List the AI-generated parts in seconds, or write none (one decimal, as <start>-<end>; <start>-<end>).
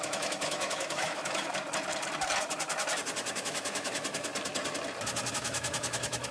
0.0-1.5; 3.4-4.3; 5.3-6.3